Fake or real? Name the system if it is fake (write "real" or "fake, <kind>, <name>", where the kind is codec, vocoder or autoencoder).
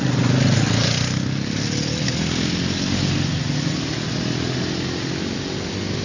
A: real